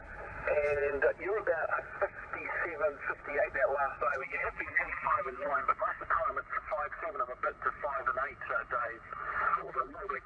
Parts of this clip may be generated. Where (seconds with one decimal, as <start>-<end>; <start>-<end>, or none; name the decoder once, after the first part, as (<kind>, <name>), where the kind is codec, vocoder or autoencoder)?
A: 4.1-5.5 (vocoder, BigVGAN v2); 9.5-10.3

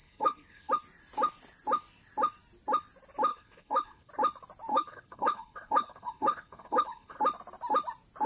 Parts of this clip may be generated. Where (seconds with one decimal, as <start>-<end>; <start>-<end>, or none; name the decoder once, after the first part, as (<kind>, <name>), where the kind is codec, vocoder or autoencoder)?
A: 0.0-0.7 (codec, HILCodec); 3.3-4.1; 4.7-7.2

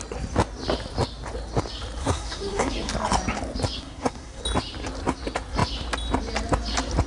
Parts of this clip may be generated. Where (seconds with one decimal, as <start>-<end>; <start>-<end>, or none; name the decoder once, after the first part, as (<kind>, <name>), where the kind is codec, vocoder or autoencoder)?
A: 2.0-2.9 (codec, SNAC); 3.8-4.4

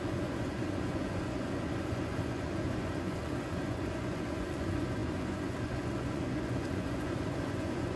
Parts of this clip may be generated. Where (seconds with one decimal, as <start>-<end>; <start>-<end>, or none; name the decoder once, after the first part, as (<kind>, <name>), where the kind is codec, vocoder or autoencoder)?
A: 0.0-8.0 (vocoder, Vocos)

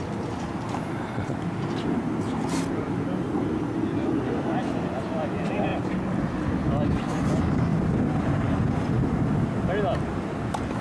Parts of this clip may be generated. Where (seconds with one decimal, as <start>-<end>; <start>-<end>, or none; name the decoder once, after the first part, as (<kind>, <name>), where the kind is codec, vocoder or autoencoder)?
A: none

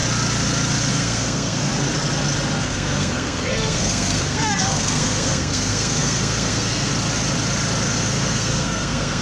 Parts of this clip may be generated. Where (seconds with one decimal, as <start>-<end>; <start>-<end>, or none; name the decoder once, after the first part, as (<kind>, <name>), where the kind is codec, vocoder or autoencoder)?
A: 0.9-1.7 (codec, SNAC); 2.6-6.9; 8.0-9.2

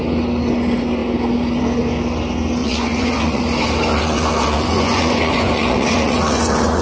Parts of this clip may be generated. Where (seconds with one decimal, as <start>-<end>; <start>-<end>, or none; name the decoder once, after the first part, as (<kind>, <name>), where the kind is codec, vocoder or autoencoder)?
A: 2.6-3.4 (vocoder, Vocos); 3.9-6.8

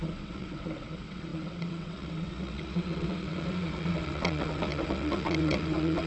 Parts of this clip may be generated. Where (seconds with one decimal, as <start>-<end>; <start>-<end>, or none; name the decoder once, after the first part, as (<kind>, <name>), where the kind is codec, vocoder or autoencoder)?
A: 0.0-6.1 (vocoder, WaveNeXt)